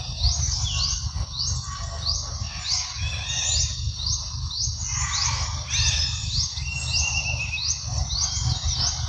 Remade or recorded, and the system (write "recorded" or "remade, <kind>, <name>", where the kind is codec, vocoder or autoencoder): recorded